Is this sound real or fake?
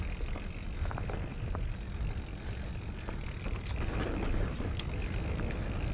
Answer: real